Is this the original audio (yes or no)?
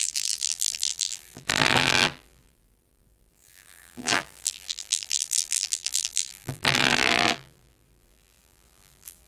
no